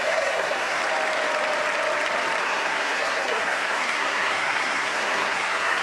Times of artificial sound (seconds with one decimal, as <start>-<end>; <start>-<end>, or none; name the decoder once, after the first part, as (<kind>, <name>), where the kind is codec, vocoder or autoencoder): 0.0-0.8 (codec, SNAC); 2.4-5.8